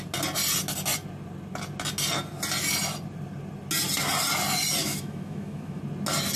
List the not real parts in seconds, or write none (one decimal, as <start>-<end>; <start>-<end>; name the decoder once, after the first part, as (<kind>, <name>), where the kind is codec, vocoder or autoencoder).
4.8-5.8 (autoencoder, DAC-VAE)